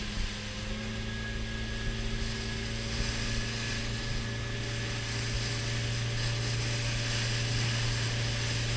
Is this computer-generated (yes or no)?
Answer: no